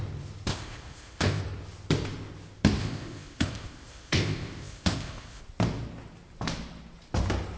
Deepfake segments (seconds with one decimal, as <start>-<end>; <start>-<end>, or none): 0.5-1.4; 2.8-5.4